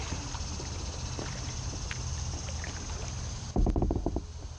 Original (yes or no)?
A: yes